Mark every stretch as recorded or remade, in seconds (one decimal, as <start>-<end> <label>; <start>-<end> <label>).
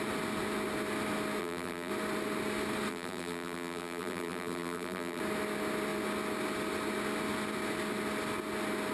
0.0-1.4 recorded; 1.4-1.9 remade; 1.9-2.9 recorded; 2.9-5.2 remade; 5.2-8.9 recorded